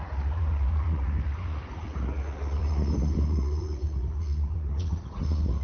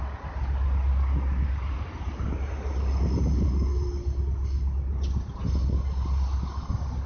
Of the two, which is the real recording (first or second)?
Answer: second